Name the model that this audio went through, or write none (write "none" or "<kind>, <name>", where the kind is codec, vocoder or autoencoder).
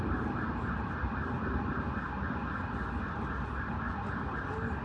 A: none